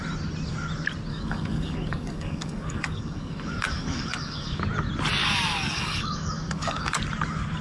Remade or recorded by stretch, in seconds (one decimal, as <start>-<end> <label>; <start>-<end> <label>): 0.0-1.1 recorded; 1.1-4.6 remade; 4.6-5.2 recorded; 5.2-7.0 remade; 7.0-7.6 recorded